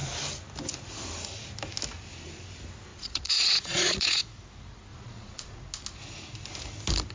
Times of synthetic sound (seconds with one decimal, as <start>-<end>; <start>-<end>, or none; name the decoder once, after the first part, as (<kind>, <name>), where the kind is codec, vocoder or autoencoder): 2.9-4.2 (vocoder, Vocos); 4.9-5.6